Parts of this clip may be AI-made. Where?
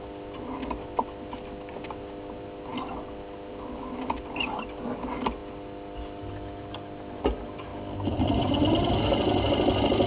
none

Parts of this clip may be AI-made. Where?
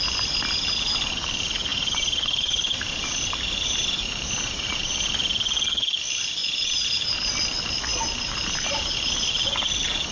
1.7-5.1 (vocoder, BigVGAN v2); 6.4-7.3; 7.9-9.1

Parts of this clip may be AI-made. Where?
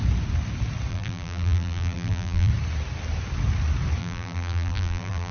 0.9-2.5 (vocoder, BigVGAN v2); 4.0-5.3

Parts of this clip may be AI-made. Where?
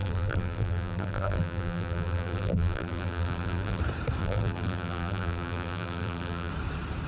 0.0-3.8 (vocoder, BigVGAN v2); 4.2-6.5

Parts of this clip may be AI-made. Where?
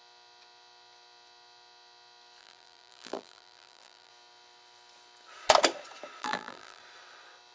2.4-4.1 (vocoder, BigVGAN v2); 6.2-6.8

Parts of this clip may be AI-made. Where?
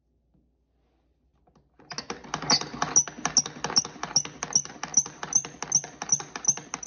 none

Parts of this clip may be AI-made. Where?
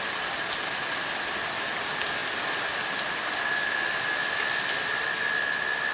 4.2-5.2 (vocoder, BigVGAN v2)